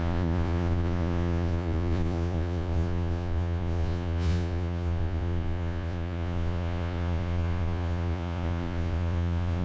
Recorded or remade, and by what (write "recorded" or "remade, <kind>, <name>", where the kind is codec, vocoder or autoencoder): remade, vocoder, Vocos